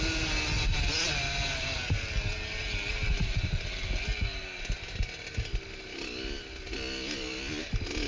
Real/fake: real